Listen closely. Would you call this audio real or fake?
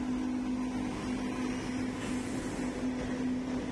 real